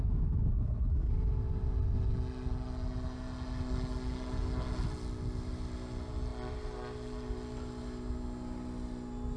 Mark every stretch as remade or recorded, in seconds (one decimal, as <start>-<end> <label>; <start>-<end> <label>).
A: 0.0-0.5 recorded; 0.5-1.1 remade; 1.1-9.4 recorded